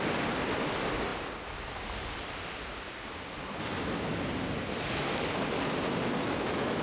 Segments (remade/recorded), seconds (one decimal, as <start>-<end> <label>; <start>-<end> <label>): 0.0-6.2 recorded; 6.2-6.8 remade